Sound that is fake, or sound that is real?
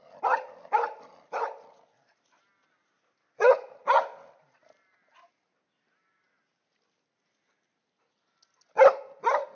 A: real